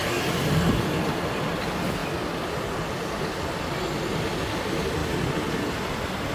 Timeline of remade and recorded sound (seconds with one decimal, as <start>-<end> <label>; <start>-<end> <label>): 0.0-6.3 recorded